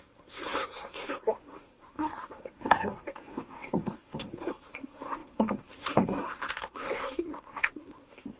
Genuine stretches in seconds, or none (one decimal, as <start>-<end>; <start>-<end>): none